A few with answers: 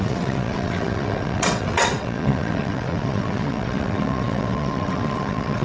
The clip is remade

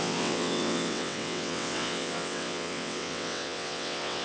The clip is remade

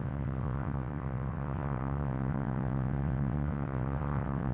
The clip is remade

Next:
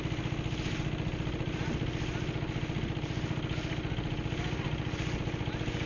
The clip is recorded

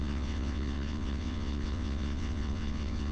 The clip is remade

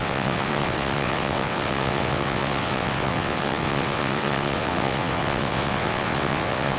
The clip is remade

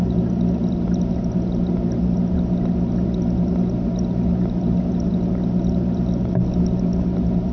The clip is recorded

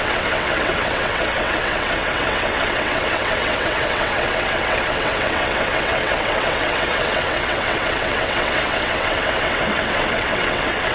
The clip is remade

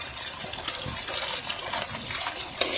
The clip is recorded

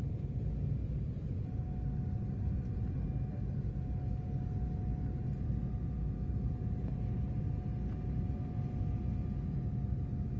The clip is recorded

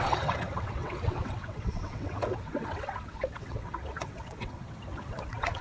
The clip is remade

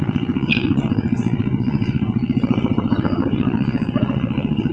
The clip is remade